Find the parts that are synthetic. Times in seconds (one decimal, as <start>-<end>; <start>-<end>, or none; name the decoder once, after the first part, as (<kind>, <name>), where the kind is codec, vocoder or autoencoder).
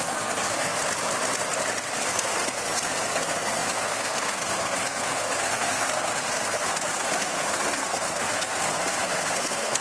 0.0-0.8 (codec, SNAC); 2.0-9.8